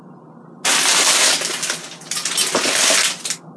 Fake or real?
real